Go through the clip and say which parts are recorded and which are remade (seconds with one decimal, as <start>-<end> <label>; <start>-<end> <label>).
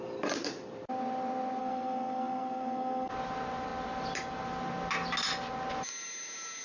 0.0-1.6 recorded; 1.6-3.1 remade; 3.1-6.6 recorded